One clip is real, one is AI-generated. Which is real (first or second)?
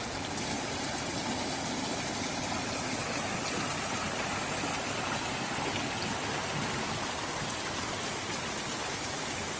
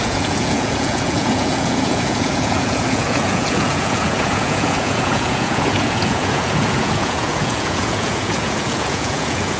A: first